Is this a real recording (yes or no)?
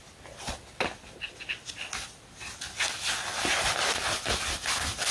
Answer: yes